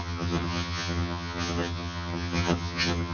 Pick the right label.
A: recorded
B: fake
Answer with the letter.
B